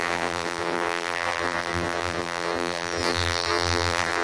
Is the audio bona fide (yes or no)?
no